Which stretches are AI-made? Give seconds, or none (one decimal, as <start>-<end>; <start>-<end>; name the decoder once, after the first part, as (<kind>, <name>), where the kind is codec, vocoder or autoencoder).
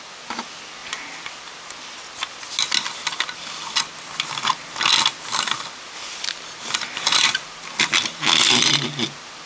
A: none